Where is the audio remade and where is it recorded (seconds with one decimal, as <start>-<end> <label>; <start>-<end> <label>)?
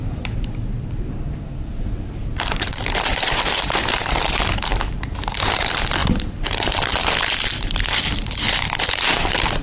0.0-9.6 remade